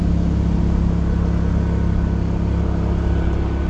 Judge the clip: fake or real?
real